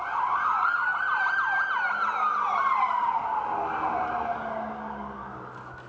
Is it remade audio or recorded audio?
recorded